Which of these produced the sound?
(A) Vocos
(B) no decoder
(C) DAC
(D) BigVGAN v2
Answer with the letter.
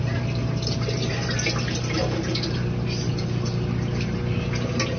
B